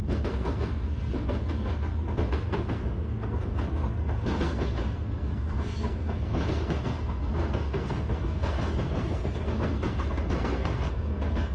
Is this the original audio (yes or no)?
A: no